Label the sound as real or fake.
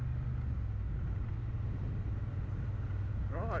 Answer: real